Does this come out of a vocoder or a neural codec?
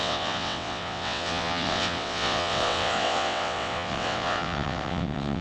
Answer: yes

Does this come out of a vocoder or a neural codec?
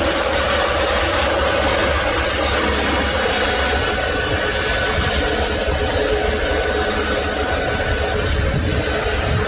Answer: no